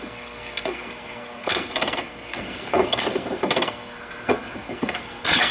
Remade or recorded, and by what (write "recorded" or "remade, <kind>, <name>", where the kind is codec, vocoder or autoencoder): remade, codec, SNAC